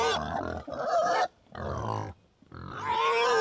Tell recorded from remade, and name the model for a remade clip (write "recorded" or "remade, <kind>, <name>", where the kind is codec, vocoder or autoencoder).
recorded